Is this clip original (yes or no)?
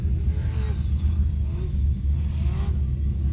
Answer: yes